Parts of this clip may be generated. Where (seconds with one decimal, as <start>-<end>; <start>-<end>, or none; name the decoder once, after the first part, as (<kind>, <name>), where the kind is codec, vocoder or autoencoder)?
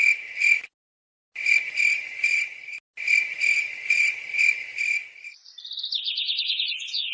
none